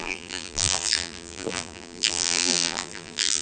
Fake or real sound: fake